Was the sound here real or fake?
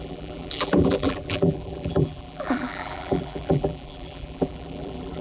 fake